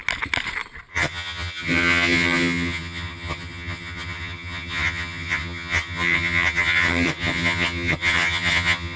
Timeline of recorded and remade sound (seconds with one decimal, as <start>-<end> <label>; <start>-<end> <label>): 0.0-0.9 recorded; 0.9-9.0 remade